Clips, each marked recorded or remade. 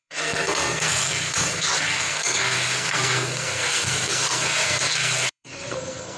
remade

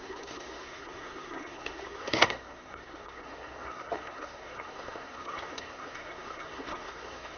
remade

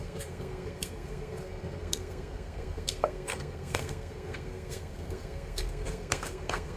remade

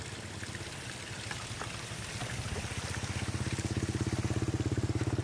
recorded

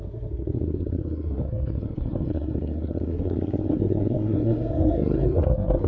remade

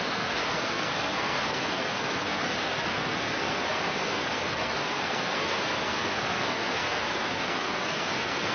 remade